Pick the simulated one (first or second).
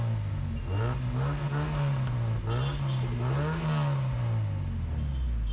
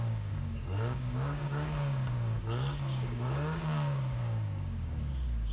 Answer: second